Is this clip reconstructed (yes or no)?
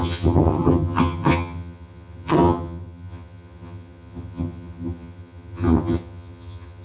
yes